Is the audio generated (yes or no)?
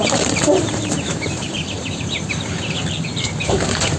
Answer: yes